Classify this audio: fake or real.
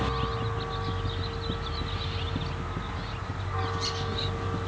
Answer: real